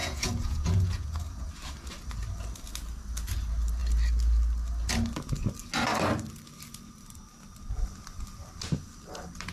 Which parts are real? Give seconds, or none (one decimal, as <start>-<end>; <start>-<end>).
1.5-9.5